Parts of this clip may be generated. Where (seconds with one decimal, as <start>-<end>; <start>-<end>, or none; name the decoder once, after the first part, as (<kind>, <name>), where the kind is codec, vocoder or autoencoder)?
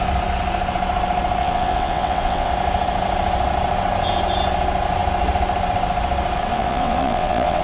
1.4-2.5 (vocoder, WaveNeXt); 6.5-7.6